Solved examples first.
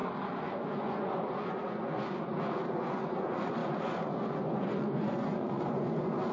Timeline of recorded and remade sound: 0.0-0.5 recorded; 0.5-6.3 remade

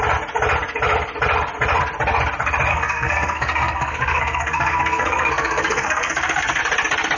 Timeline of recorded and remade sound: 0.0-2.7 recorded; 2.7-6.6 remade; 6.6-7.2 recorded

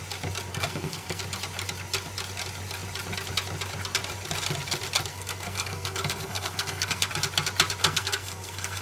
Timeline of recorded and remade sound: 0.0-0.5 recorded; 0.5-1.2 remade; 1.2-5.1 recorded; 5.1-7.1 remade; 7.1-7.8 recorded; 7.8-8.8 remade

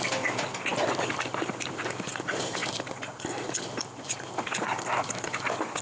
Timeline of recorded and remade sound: 0.0-5.8 recorded

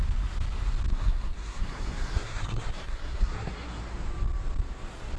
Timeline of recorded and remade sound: 0.0-0.9 recorded; 0.9-3.8 remade; 3.8-5.2 recorded

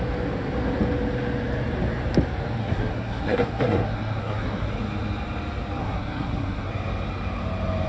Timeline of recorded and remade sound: 0.0-2.6 recorded; 2.6-4.7 remade; 4.7-5.8 recorded; 5.8-6.7 remade; 6.7-7.9 recorded